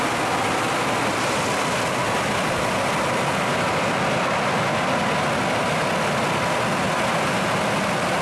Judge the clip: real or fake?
real